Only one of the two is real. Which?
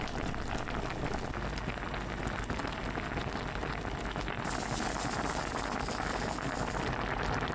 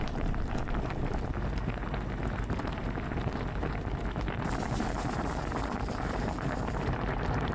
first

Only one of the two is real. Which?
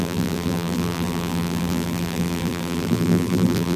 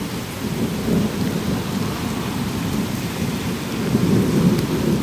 second